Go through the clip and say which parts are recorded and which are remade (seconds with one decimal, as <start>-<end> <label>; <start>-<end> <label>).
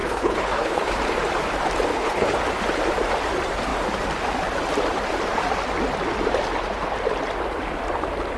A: 0.0-0.9 remade; 0.9-1.9 recorded; 1.9-2.4 remade; 2.4-8.4 recorded